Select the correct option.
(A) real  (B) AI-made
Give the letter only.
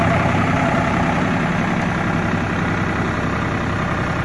A